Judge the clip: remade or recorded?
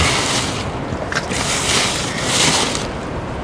recorded